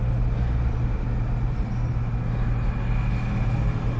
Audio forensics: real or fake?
real